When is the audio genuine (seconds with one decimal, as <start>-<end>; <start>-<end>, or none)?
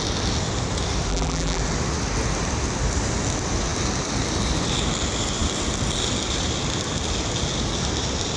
0.0-1.1; 1.6-8.4